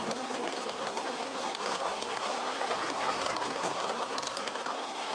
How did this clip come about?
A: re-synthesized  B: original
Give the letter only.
A